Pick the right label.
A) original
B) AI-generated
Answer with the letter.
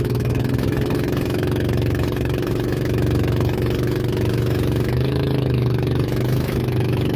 B